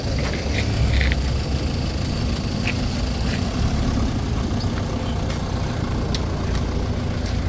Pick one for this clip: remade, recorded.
recorded